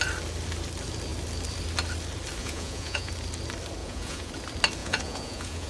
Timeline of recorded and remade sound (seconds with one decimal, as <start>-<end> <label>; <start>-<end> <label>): 0.0-2.4 recorded; 2.4-3.1 remade; 3.1-3.8 recorded; 3.8-4.3 remade; 4.3-4.8 recorded; 4.8-5.7 remade

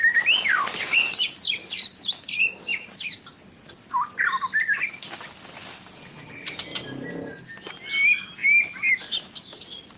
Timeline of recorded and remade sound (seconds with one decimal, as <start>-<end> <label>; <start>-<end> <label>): 0.0-10.0 recorded

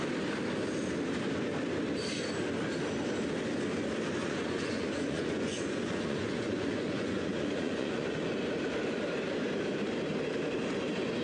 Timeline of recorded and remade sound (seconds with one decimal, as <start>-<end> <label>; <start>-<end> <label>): 0.0-4.2 recorded; 4.2-8.3 remade; 8.3-11.2 recorded

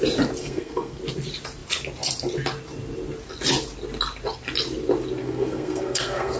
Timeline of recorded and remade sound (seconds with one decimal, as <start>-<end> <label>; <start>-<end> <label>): 0.0-0.4 recorded; 0.4-1.0 remade; 1.0-5.2 recorded; 5.2-6.4 remade